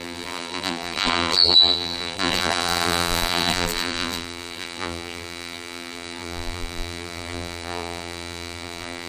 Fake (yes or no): yes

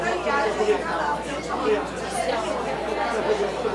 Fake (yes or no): no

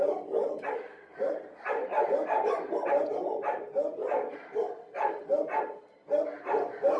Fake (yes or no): no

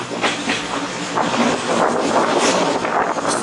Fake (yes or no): no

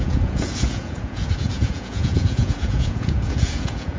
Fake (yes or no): yes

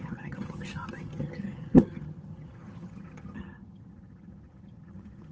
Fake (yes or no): yes